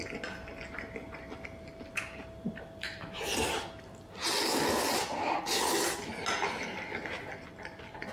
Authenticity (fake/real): real